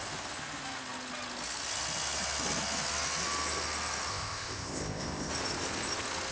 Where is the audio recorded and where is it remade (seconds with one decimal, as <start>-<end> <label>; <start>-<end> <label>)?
0.0-4.1 recorded; 4.1-5.3 remade; 5.3-6.3 recorded